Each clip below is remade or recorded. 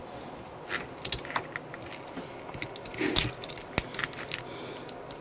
recorded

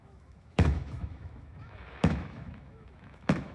remade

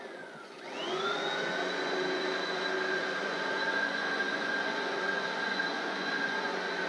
remade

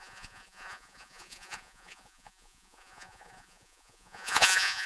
remade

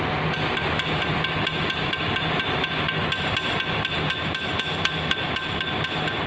recorded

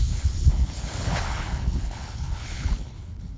remade